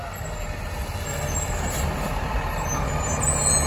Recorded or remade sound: recorded